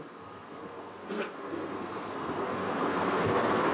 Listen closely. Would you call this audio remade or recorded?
remade